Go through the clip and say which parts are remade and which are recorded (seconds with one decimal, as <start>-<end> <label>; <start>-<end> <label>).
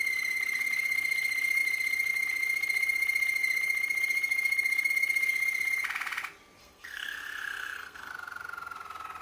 0.0-6.6 recorded; 6.6-8.1 remade; 8.1-9.2 recorded